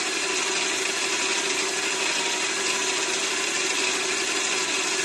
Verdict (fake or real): real